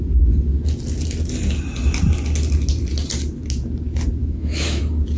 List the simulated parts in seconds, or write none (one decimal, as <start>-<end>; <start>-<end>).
4.2-4.8